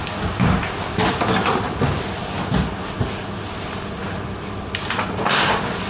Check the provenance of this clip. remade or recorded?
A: recorded